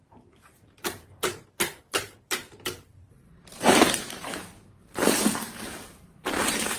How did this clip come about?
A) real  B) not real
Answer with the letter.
B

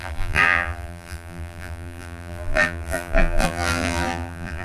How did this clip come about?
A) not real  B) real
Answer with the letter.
A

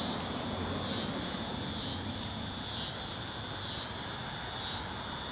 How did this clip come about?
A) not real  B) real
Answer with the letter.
A